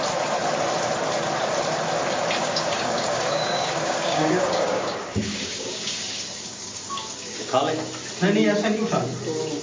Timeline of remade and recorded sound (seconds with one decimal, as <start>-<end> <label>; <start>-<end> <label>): 0.0-2.4 recorded; 2.4-7.6 remade; 7.6-9.6 recorded